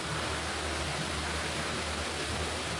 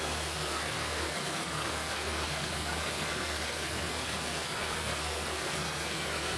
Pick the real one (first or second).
first